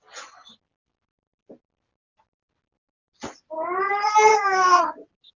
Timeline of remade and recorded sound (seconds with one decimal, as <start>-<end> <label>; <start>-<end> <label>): 0.0-4.3 recorded; 4.3-4.8 remade; 4.8-5.4 recorded

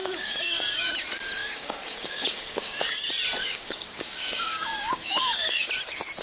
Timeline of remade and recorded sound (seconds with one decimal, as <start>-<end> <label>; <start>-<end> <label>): 0.0-0.9 remade; 0.9-1.4 recorded; 1.4-2.8 remade; 2.8-3.4 recorded; 3.4-5.7 remade; 5.7-6.2 recorded

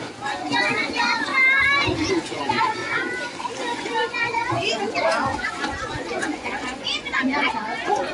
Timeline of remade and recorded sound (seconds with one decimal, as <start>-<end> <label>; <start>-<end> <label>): 0.0-1.3 remade; 1.3-2.1 recorded; 2.1-2.8 remade; 2.8-3.6 recorded; 3.6-8.1 remade

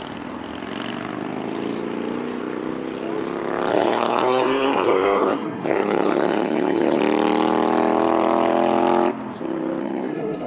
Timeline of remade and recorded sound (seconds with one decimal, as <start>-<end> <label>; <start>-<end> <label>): 0.0-3.7 recorded; 3.7-7.0 remade; 7.0-9.8 recorded; 9.8-10.5 remade

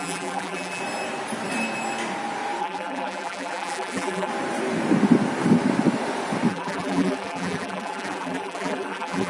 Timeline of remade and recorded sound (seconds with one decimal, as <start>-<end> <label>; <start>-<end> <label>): 0.0-0.8 remade; 0.8-2.6 recorded; 2.6-4.3 remade; 4.3-6.5 recorded; 6.5-9.3 remade